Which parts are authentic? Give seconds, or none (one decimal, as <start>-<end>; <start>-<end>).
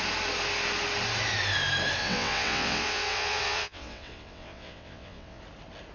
0.0-2.0; 5.4-5.9